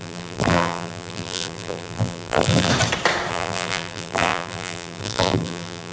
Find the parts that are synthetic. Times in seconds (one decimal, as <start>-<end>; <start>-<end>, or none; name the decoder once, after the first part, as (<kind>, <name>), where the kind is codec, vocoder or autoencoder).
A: 0.0-2.7 (vocoder, BigVGAN v2); 3.3-5.9